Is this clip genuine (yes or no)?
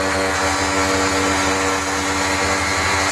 yes